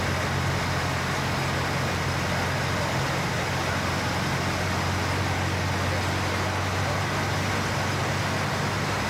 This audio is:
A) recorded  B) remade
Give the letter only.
A